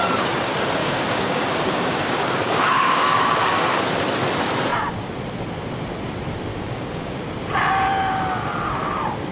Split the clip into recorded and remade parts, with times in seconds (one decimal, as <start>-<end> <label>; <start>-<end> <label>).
0.0-0.8 recorded; 0.8-3.8 remade; 3.8-6.5 recorded; 6.5-7.1 remade; 7.1-9.3 recorded